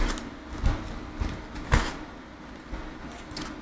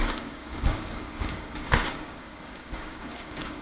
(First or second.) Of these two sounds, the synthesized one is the second